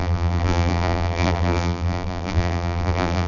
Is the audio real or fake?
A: fake